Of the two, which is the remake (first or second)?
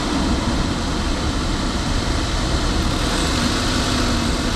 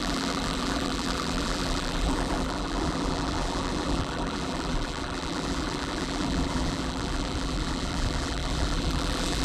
second